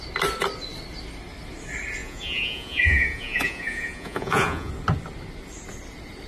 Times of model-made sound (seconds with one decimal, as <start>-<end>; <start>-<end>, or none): 2.0-4.7